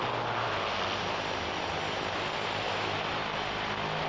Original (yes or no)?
yes